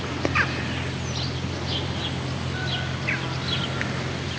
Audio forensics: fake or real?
real